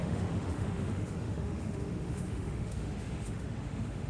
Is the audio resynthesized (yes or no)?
yes